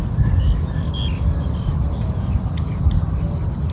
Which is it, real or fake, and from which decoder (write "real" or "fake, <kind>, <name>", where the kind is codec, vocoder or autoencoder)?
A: real